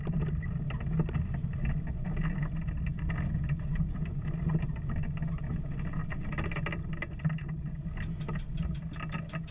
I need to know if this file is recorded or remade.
recorded